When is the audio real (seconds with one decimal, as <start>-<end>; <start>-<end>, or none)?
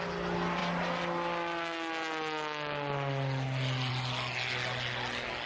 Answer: 0.0-5.5